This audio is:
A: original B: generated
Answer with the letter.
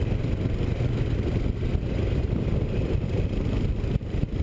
A